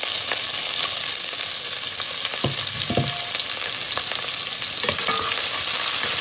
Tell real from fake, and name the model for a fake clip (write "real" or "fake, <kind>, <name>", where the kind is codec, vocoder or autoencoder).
real